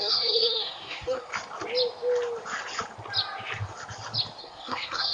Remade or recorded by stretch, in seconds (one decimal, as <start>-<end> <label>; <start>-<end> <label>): 0.0-1.3 remade; 1.3-4.4 recorded; 4.4-5.1 remade